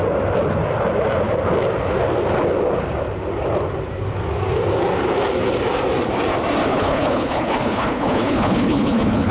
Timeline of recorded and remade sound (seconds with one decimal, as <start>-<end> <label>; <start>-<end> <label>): 0.0-6.7 recorded; 6.7-9.3 remade